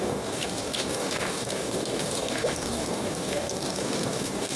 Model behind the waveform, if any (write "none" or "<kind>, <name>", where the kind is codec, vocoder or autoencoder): codec, DAC